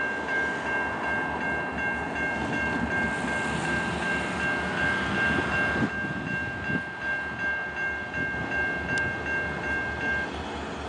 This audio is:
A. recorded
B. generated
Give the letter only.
A